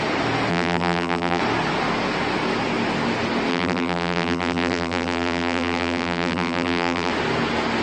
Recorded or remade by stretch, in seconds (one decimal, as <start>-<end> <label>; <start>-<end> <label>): 0.0-0.5 recorded; 0.5-1.4 remade; 1.4-3.5 recorded; 3.5-7.1 remade; 7.1-7.8 recorded